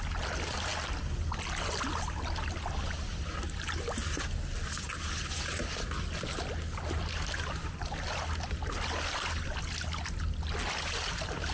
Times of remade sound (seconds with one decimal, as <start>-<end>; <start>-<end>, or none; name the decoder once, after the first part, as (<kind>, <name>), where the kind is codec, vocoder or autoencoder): none